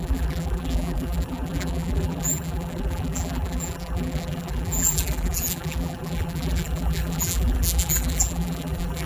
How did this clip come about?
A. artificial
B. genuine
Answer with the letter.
A